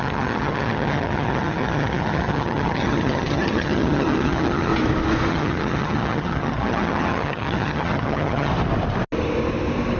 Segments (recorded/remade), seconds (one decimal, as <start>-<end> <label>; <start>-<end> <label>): 0.0-4.7 remade; 4.7-5.3 recorded; 5.3-8.5 remade; 8.5-10.0 recorded